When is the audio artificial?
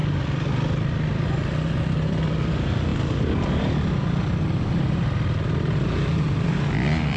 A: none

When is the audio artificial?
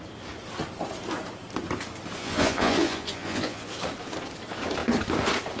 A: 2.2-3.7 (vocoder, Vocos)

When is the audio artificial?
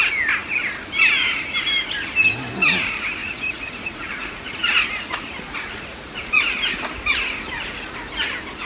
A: 3.2-6.3 (vocoder, Vocos)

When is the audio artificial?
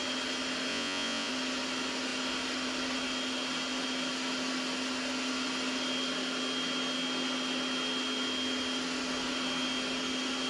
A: 0.7-1.3 (vocoder, Vocos)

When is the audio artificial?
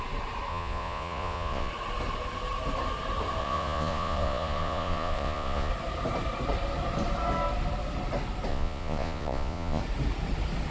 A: 0.5-1.7 (vocoder, Vocos); 3.4-5.7; 8.5-9.8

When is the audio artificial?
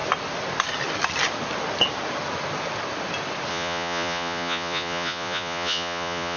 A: 3.5-6.4 (vocoder, Vocos)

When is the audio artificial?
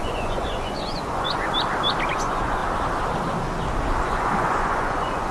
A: 0.0-1.5 (vocoder, Vocos); 2.1-2.6; 4.0-5.3